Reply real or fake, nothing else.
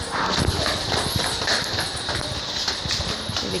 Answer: fake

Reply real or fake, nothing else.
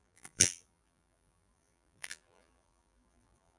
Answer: fake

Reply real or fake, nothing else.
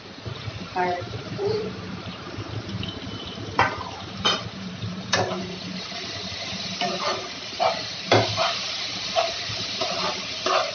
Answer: fake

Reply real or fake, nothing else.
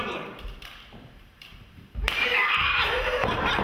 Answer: fake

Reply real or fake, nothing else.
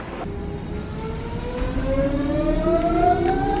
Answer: real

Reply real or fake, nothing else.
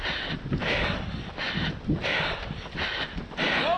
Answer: real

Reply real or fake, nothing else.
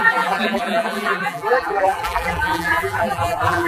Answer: fake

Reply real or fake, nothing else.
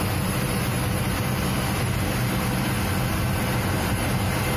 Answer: real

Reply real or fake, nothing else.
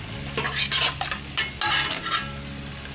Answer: real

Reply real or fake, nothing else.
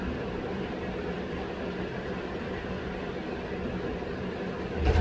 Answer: real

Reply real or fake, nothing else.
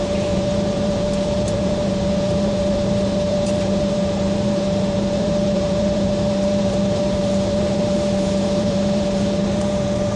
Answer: fake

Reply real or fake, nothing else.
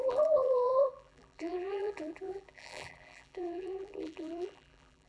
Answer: fake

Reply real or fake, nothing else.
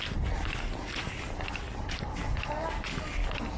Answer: real